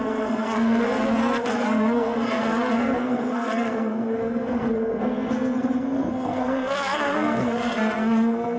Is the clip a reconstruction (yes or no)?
yes